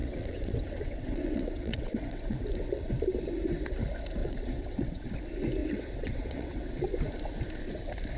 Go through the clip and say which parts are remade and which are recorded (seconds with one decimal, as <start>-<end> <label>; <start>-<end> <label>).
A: 0.0-2.8 remade; 2.8-4.2 recorded; 4.2-5.0 remade; 5.0-5.6 recorded; 5.6-6.9 remade; 6.9-8.2 recorded